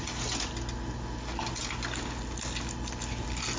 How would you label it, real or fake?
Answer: real